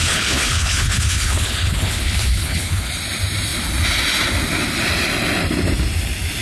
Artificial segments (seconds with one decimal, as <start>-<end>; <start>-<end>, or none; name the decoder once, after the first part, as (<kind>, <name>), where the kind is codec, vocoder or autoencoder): 0.0-2.9 (codec, HILCodec)